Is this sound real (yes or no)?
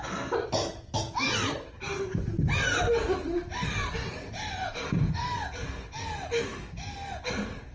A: yes